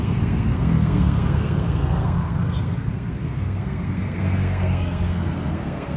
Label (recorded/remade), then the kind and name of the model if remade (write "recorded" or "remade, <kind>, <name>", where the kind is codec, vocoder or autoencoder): remade, codec, SNAC